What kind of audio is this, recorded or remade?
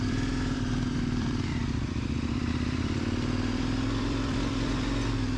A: remade